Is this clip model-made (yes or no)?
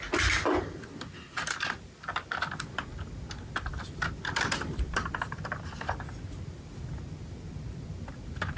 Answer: no